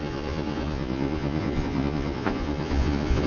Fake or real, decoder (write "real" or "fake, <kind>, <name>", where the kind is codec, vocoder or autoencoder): fake, vocoder, Vocos